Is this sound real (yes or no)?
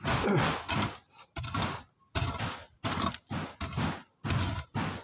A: yes